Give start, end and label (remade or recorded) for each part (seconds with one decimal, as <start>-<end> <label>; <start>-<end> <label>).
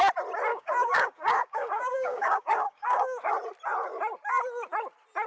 0.0-0.5 recorded; 0.5-3.3 remade; 3.3-5.3 recorded